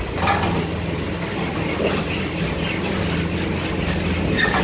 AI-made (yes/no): no